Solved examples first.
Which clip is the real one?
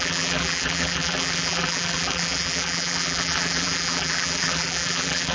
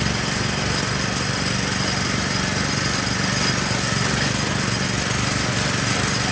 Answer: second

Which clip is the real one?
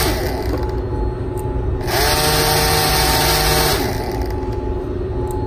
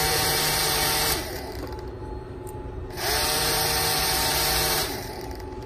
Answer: first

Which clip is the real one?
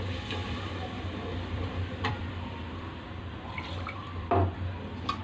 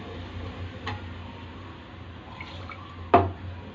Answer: second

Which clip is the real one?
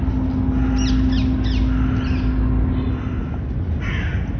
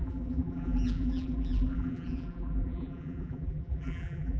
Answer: first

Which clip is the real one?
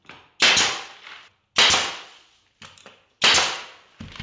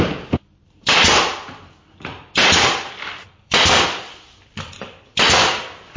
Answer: first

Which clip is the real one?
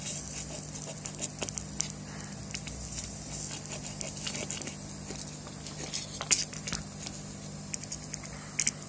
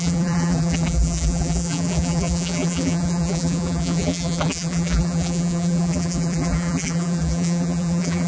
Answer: first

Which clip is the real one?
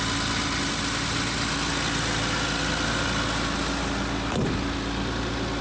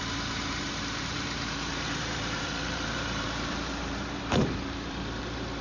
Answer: first